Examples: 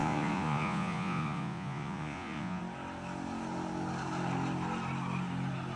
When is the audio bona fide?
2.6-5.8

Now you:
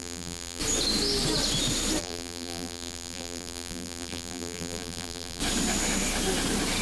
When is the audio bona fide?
0.6-2.0; 5.4-6.8

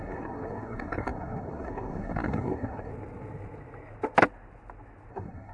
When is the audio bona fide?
2.9-5.1